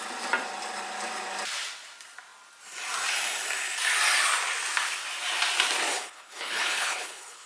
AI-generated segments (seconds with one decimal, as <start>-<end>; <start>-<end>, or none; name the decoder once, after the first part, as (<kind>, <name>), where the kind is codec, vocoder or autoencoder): 5.9-7.5 (codec, HILCodec)